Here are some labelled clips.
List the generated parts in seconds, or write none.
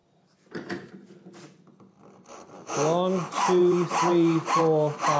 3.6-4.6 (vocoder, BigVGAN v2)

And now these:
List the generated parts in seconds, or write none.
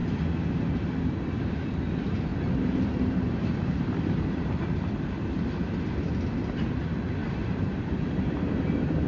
2.3-4.9 (vocoder, BigVGAN v2); 7.2-8.5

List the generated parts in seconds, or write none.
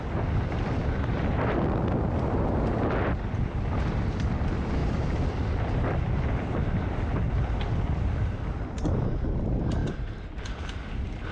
none